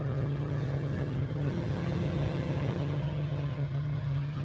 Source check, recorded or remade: remade